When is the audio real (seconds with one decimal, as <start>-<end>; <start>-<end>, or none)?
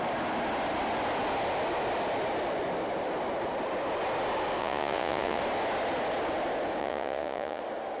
0.0-4.6; 5.4-6.8; 7.6-8.0